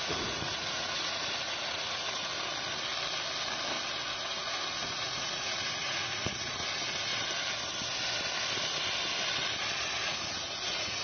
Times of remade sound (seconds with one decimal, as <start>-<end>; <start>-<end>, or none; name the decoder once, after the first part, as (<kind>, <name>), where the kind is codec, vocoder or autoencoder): 0.0-2.3 (vocoder, Vocos); 4.1-7.1; 10.0-11.0